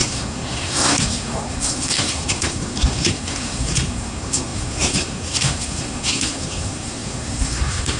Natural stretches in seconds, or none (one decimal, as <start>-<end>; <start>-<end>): none